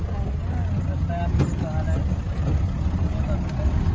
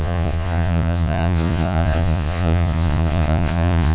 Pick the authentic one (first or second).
first